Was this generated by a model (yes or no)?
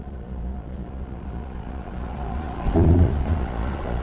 yes